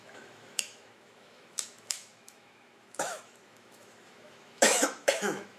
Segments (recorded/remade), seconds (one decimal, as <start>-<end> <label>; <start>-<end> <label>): 0.0-5.6 remade